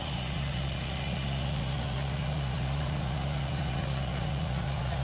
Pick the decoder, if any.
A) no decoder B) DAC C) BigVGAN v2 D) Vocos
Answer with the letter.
D